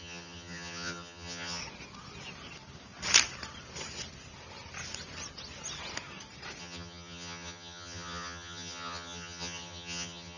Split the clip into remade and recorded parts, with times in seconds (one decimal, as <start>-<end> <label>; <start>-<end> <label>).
0.0-1.6 remade; 1.6-6.6 recorded; 6.6-10.4 remade